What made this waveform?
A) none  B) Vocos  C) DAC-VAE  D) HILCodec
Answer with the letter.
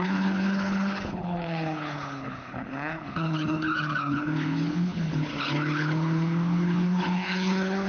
D